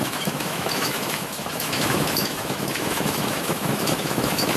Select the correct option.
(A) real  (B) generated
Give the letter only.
B